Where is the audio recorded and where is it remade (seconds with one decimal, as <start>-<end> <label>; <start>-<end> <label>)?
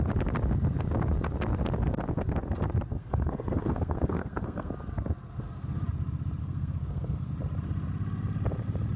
0.0-3.0 recorded; 3.0-4.7 remade; 4.7-6.4 recorded; 6.4-7.3 remade; 7.3-9.0 recorded